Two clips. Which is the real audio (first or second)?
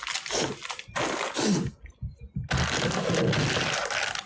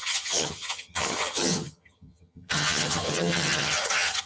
first